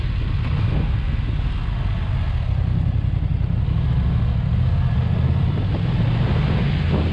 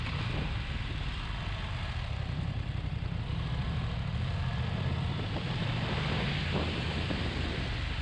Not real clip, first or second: second